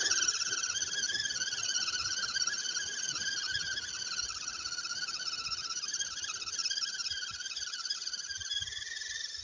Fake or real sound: real